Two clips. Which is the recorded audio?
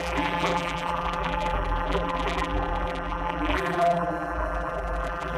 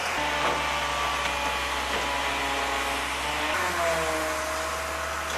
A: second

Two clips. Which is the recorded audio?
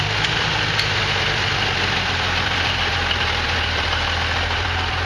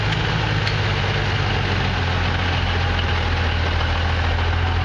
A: second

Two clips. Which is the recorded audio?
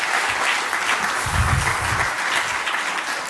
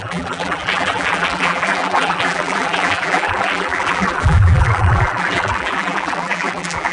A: first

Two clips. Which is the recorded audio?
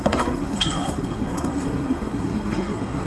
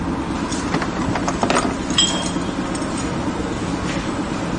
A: second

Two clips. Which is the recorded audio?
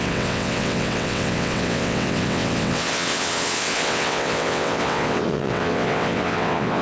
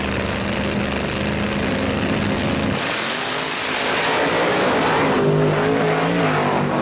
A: second